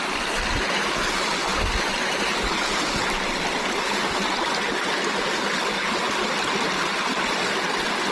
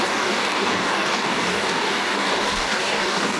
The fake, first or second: second